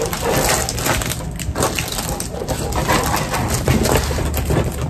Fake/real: real